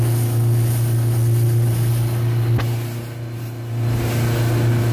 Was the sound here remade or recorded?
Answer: recorded